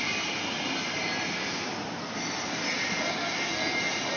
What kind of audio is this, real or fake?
real